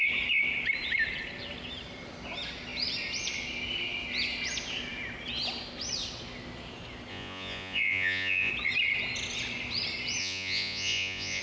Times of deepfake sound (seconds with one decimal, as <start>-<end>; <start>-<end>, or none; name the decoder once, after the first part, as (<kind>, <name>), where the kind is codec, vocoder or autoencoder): 7.1-8.5 (vocoder, Vocos); 10.2-11.4